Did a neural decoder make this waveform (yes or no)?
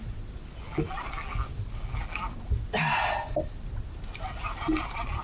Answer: no